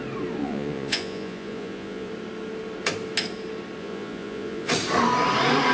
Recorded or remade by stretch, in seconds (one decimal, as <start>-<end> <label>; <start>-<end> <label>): 0.0-0.4 recorded; 0.4-2.1 remade; 2.1-3.8 recorded; 3.8-4.7 remade; 4.7-5.7 recorded